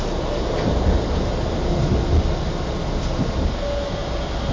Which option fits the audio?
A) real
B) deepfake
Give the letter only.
A